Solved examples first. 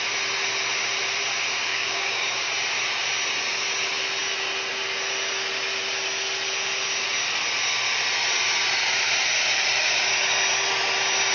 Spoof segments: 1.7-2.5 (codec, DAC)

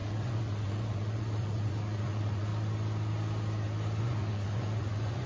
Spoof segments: 0.0-2.5 (vocoder, Vocos); 4.0-5.3

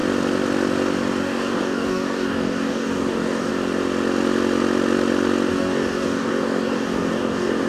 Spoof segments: 1.2-3.5 (codec, DAC); 5.5-7.7

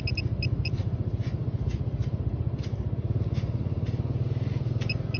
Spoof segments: none